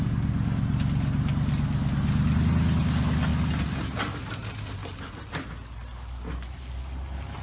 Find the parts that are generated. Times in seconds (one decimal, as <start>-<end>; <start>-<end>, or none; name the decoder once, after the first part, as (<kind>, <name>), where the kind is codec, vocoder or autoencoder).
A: none